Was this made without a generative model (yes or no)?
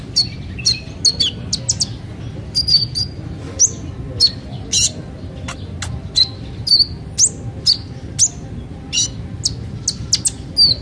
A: yes